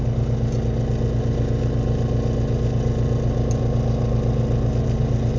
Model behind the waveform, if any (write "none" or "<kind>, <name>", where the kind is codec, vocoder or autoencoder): none